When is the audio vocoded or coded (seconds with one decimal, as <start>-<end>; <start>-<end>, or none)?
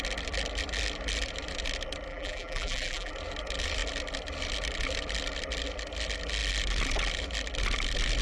2.1-3.1